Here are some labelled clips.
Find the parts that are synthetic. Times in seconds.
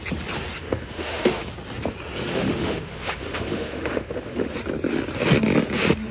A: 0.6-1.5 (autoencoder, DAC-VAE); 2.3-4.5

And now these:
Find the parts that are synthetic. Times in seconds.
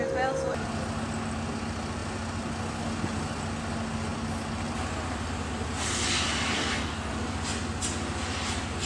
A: 6.5-7.1 (codec, DAC)